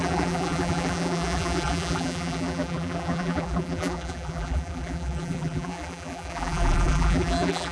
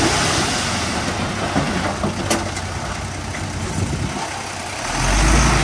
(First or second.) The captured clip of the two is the second